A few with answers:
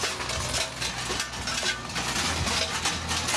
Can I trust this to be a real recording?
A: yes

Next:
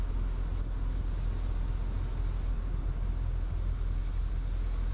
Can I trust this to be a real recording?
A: yes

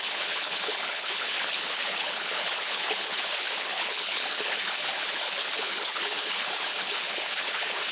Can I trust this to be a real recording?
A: no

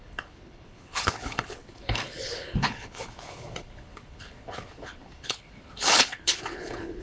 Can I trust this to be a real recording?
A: no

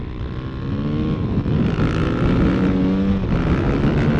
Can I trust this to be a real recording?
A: yes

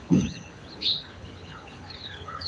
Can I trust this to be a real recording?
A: no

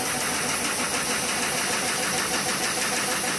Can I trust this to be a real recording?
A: yes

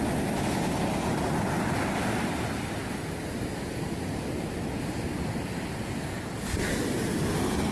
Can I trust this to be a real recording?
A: yes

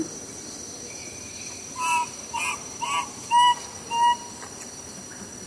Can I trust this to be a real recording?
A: yes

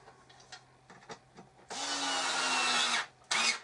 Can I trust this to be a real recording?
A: yes